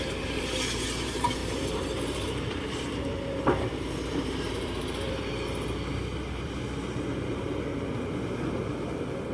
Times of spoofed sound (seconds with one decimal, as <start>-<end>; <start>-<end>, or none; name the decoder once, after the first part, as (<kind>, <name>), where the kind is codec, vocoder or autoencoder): 0.0-7.7 (vocoder, BigVGAN v2); 8.7-9.3